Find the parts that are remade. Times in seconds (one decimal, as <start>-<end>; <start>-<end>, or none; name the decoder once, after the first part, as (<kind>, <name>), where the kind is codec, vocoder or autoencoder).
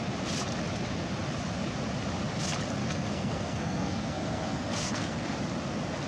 2.8-5.4 (codec, SNAC)